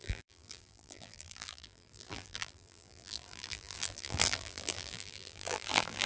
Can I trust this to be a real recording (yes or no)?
no